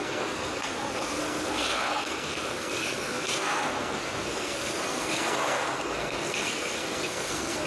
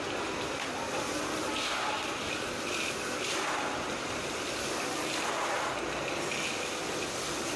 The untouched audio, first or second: second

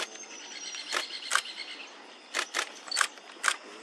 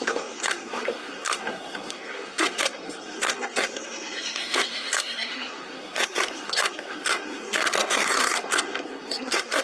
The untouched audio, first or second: first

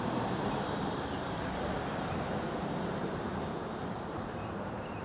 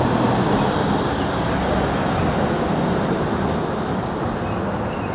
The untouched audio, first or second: second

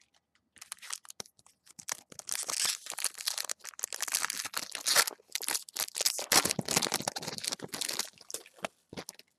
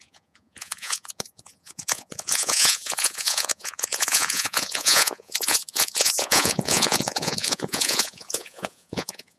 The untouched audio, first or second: first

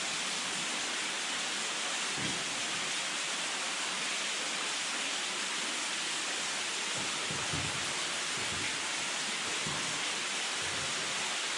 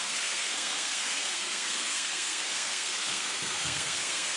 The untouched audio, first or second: first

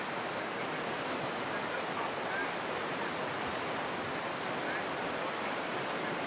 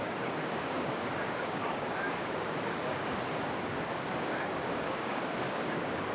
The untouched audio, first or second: first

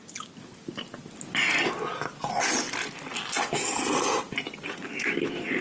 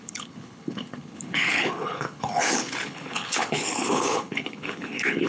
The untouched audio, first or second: first